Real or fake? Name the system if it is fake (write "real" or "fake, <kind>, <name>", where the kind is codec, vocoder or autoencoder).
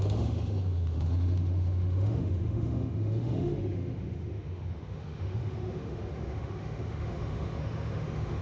fake, autoencoder, DAC-VAE